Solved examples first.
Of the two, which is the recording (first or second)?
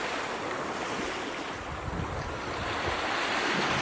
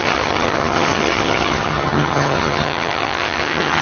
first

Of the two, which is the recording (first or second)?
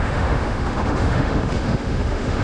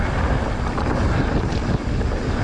second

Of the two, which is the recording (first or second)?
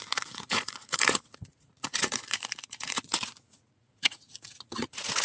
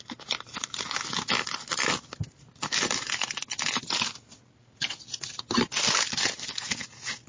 second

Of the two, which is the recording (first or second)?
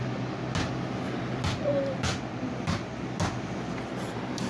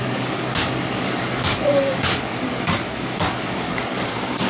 first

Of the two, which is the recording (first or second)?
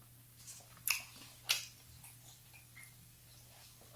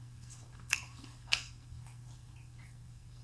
first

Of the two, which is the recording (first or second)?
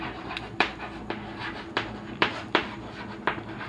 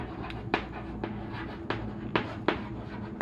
second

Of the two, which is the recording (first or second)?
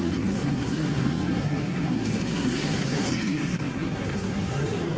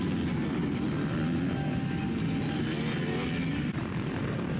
second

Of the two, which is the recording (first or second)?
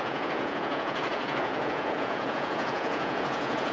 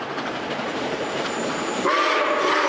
second